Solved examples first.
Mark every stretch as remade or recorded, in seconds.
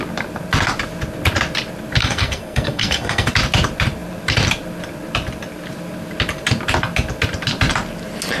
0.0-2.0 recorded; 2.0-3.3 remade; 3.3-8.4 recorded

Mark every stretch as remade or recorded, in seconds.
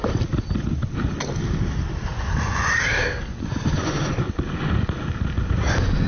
0.0-2.1 recorded; 2.1-2.7 remade; 2.7-3.3 recorded; 3.3-4.1 remade; 4.1-6.1 recorded